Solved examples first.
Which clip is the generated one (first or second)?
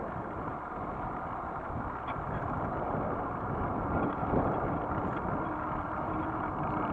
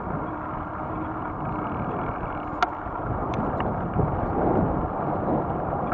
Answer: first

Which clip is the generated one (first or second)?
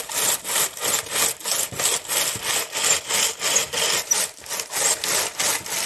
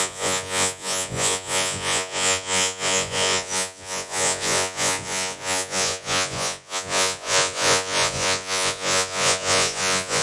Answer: second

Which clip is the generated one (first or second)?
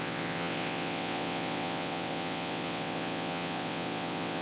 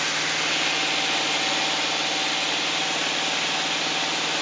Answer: first